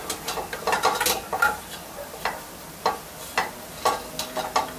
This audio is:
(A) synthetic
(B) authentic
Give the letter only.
B